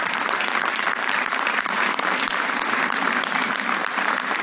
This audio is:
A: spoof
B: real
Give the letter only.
A